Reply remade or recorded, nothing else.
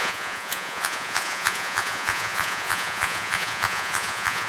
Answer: remade